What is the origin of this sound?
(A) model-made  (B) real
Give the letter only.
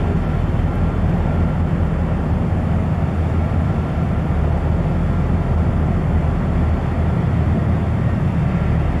B